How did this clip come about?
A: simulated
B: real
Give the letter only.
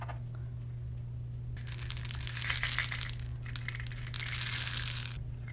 B